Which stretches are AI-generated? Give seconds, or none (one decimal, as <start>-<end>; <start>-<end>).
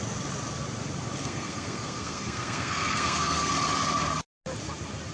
1.2-3.5